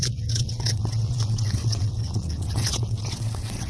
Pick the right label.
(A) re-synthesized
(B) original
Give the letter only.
A